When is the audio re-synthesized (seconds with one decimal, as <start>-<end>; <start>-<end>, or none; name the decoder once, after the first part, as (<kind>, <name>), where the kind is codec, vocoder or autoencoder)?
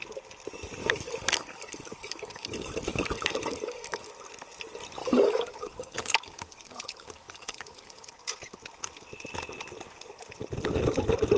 0.8-4.1 (codec, DAC); 5.0-8.1